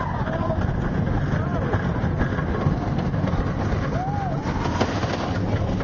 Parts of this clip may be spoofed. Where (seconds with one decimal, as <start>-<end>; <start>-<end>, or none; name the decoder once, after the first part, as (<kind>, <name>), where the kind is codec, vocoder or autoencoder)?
none

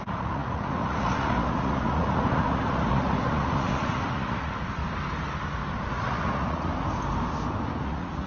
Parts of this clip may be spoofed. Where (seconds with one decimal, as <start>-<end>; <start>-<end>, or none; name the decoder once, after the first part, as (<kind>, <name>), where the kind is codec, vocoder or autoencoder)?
0.0-4.8 (vocoder, Vocos); 5.9-6.7; 7.8-8.3

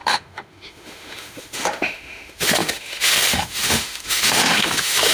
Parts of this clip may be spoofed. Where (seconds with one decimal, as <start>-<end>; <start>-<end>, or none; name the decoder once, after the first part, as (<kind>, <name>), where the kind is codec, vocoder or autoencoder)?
0.0-5.1 (autoencoder, DAC-VAE)